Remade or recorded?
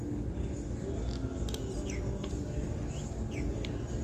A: recorded